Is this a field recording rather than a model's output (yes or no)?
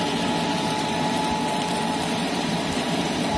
no